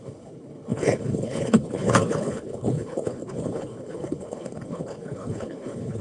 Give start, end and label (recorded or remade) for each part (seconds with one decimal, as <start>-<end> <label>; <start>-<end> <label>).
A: 0.0-6.0 remade